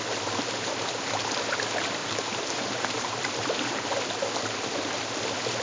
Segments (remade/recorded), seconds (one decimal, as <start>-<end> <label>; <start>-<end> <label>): 0.0-2.0 recorded; 2.0-3.1 remade; 3.1-5.6 recorded